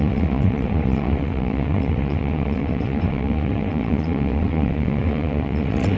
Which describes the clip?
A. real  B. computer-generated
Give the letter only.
B